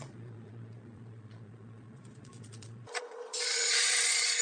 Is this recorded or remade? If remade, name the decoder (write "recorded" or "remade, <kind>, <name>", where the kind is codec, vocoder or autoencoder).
remade, vocoder, Vocos